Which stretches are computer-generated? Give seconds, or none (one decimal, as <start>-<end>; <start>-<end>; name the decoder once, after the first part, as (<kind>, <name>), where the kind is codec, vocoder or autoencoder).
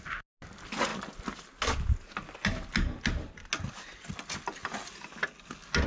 none